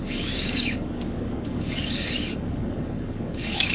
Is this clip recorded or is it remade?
remade